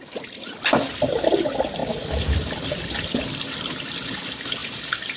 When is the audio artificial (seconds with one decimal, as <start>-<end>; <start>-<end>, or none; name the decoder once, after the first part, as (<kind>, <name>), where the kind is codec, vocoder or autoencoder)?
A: none